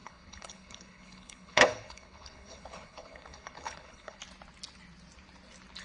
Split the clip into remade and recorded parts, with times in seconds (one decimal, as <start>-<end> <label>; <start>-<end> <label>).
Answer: 0.0-4.2 remade; 4.2-5.8 recorded